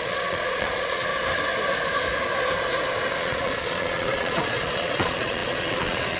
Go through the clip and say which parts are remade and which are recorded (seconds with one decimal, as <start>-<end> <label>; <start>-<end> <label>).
0.0-1.1 remade; 1.1-3.2 recorded; 3.2-6.2 remade